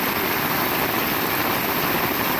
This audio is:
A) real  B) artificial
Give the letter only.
A